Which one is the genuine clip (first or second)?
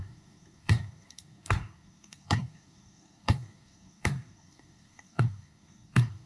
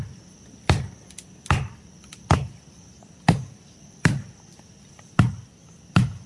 second